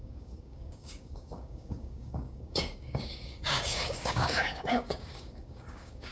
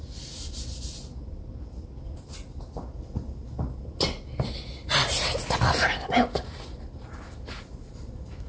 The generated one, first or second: first